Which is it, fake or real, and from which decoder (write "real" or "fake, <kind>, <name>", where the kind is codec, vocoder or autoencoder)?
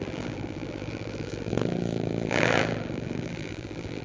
fake, vocoder, BigVGAN v2